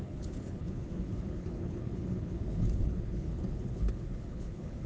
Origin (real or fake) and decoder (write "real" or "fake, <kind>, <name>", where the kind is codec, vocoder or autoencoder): fake, codec, HILCodec